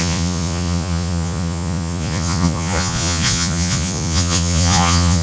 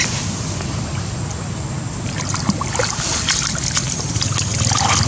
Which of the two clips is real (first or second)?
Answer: second